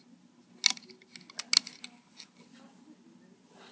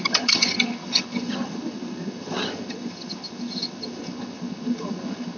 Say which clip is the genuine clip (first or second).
first